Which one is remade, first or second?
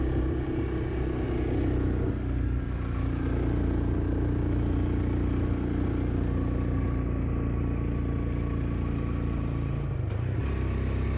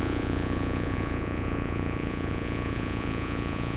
second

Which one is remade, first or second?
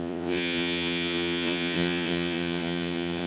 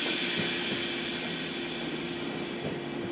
first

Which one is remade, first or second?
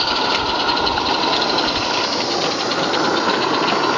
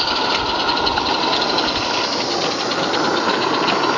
first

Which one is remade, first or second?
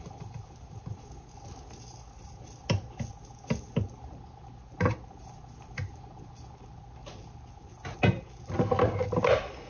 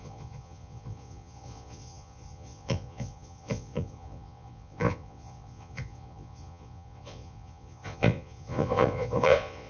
second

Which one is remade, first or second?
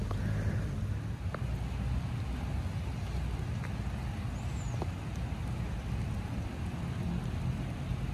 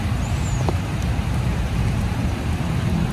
second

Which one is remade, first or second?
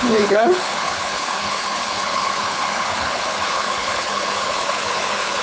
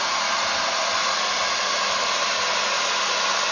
first